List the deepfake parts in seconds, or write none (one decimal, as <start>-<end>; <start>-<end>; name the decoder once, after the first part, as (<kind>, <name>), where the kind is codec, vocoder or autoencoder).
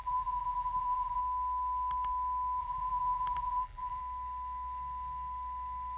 0.0-1.2 (vocoder, BigVGAN v2); 2.6-4.0